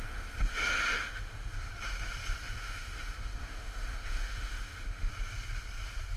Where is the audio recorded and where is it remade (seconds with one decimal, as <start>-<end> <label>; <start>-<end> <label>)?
0.0-1.7 remade; 1.7-2.4 recorded; 2.4-5.1 remade; 5.1-6.2 recorded